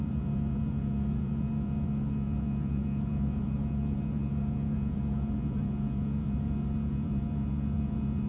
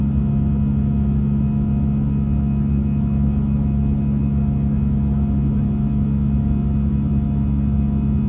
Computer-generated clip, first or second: first